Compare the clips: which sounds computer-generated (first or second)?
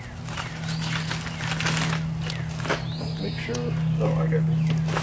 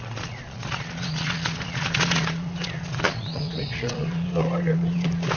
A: second